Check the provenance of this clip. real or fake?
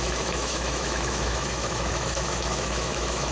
fake